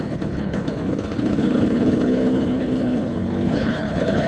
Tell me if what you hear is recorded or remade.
remade